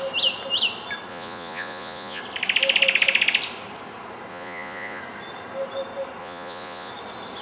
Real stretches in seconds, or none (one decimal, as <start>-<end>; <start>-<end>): 0.0-1.1; 2.2-4.3; 5.0-6.2; 6.9-7.4